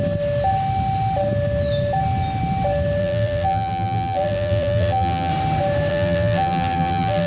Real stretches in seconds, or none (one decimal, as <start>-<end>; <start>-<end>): 0.0-3.0; 5.3-5.9